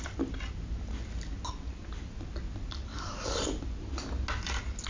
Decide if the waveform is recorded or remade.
recorded